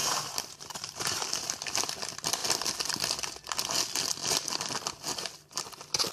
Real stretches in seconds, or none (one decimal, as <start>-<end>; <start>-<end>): 1.4-6.1